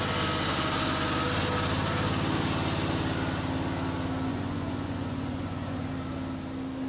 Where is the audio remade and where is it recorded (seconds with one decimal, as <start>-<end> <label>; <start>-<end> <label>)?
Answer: 0.0-4.3 recorded; 4.3-5.9 remade; 5.9-6.9 recorded